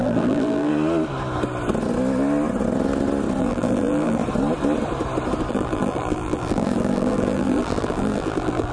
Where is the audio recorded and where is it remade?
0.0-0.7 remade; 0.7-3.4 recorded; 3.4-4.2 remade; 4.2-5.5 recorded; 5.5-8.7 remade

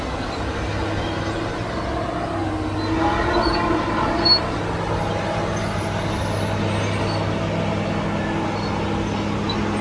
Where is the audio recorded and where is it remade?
0.0-9.8 recorded

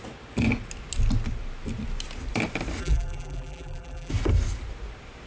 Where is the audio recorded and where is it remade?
0.0-2.8 recorded; 2.8-4.1 remade; 4.1-5.3 recorded

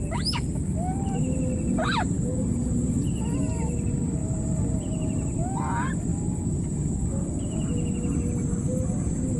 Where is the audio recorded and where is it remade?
0.0-9.4 recorded

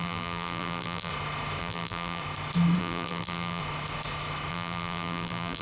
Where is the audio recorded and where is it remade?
0.0-1.1 remade; 1.1-1.6 recorded; 1.6-2.2 remade; 2.2-2.8 recorded; 2.8-3.6 remade; 3.6-4.5 recorded; 4.5-5.6 remade

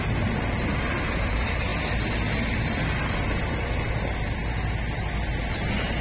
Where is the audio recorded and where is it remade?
0.0-4.4 remade; 4.4-5.4 recorded; 5.4-6.0 remade

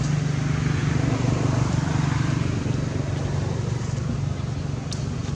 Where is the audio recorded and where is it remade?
0.0-0.8 recorded; 0.8-2.5 remade; 2.5-5.4 recorded